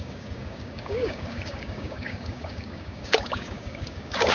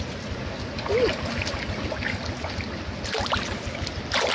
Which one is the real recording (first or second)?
second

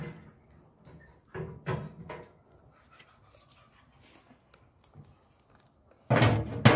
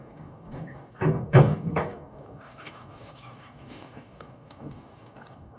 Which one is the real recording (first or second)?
first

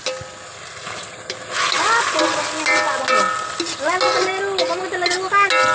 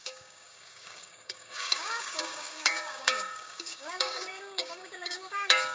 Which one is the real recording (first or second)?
first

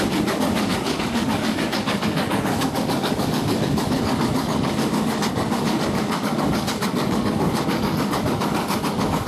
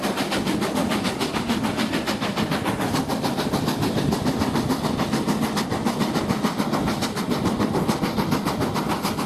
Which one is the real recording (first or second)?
second